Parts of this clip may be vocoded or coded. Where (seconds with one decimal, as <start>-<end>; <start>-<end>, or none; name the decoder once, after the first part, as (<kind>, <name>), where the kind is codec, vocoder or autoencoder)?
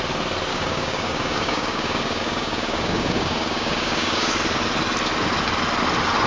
0.5-4.3 (codec, DAC)